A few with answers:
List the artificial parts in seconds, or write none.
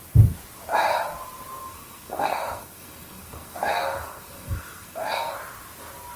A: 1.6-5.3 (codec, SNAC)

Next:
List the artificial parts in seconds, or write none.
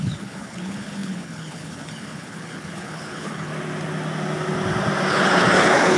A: 0.0-3.5 (codec, HILCodec); 5.1-6.0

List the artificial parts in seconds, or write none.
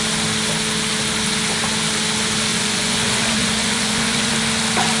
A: 2.5-4.3 (vocoder, Vocos)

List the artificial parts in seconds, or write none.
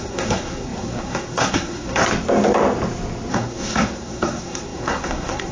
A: 0.0-2.0 (codec, SNAC); 3.3-5.5